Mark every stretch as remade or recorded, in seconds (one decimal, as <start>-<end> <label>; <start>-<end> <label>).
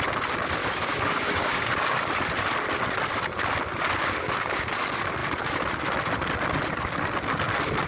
0.0-0.6 recorded; 0.6-2.1 remade; 2.1-4.0 recorded; 4.0-4.7 remade; 4.7-7.9 recorded